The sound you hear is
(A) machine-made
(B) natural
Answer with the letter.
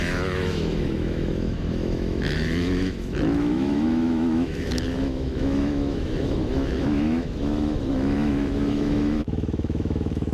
A